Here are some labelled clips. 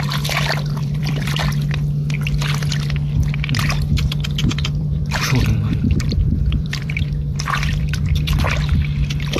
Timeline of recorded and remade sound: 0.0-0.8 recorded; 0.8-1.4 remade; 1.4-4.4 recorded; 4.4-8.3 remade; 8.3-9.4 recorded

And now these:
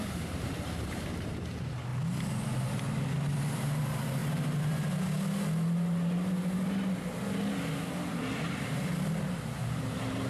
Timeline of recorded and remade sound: 0.0-1.9 remade; 1.9-3.4 recorded; 3.4-4.2 remade; 4.2-7.8 recorded; 7.8-10.3 remade

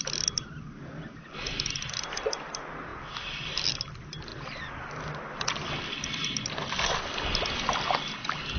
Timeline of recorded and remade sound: 0.0-8.6 recorded

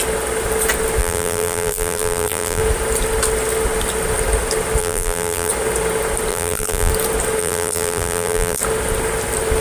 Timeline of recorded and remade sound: 0.0-1.0 recorded; 1.0-2.6 remade; 2.6-4.8 recorded; 4.8-5.5 remade; 5.5-6.3 recorded; 6.3-6.9 remade; 6.9-7.4 recorded; 7.4-8.6 remade; 8.6-9.6 recorded

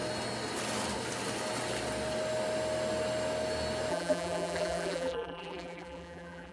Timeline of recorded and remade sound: 0.0-3.9 recorded; 3.9-6.5 remade